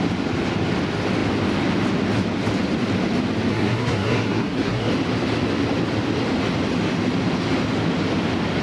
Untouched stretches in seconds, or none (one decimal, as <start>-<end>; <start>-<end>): 0.0-3.5; 4.9-8.6